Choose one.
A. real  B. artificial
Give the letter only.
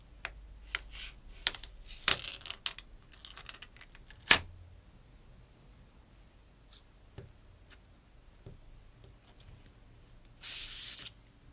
A